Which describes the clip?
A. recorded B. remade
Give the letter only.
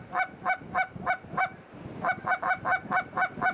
A